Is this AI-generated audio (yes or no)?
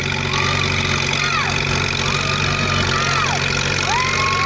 no